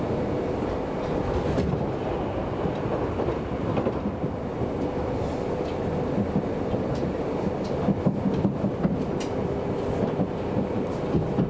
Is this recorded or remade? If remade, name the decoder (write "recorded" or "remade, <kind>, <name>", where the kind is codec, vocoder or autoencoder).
recorded